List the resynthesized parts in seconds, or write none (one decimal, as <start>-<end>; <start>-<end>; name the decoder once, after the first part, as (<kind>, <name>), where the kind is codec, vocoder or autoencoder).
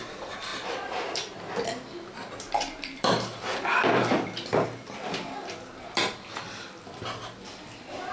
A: 0.0-0.5 (vocoder, BigVGAN v2); 2.8-8.1